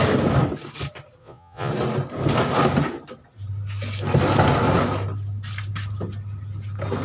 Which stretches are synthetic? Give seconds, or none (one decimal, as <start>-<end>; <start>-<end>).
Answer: 1.2-1.7

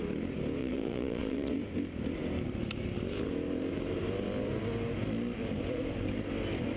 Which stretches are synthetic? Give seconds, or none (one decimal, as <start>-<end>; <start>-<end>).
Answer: 0.6-1.5

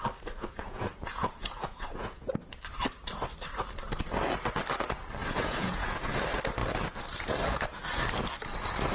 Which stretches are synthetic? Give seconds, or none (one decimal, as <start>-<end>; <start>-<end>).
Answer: 0.6-2.3; 5.2-6.1

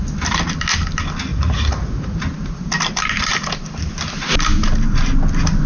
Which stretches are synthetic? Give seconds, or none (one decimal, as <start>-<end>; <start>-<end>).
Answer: 1.3-2.2

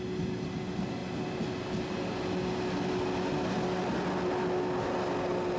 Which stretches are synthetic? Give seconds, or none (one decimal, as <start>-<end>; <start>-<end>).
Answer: none

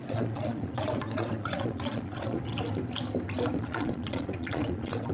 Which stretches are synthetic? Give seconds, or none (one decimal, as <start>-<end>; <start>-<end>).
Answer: 0.0-2.5; 3.6-5.1